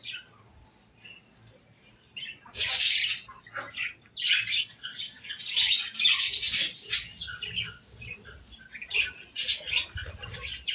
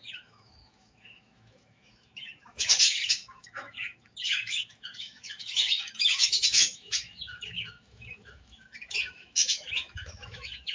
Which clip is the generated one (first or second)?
second